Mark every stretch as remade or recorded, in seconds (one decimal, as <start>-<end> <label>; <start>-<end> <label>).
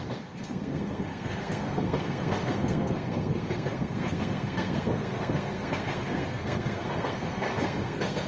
0.0-8.3 remade